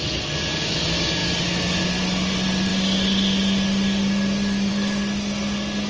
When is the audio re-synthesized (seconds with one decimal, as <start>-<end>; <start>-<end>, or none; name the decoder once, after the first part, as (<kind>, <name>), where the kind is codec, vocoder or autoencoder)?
none